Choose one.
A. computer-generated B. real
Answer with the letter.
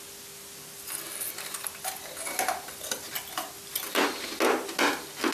B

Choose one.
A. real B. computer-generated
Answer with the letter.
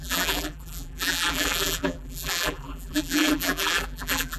B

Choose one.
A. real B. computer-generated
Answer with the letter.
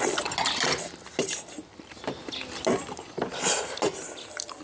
A